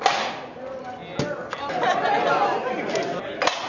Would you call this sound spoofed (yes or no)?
no